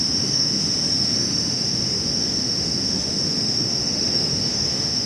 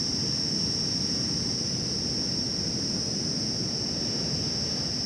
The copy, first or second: first